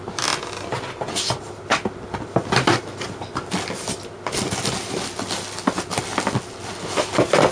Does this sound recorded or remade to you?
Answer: recorded